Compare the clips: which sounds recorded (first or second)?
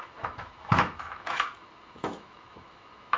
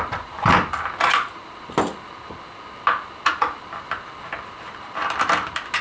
second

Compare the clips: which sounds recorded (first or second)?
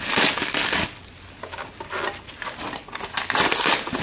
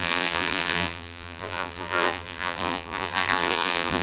first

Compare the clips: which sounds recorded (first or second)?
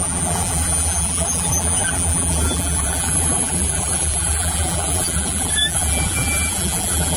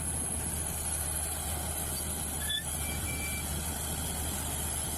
second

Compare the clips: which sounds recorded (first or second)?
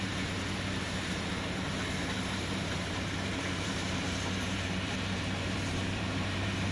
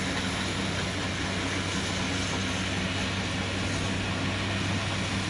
second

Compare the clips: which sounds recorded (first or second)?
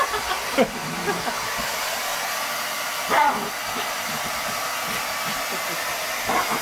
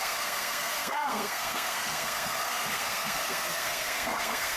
first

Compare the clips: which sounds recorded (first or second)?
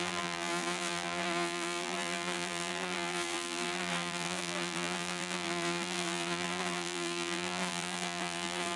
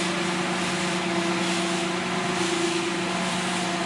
second